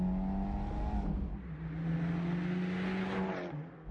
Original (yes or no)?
yes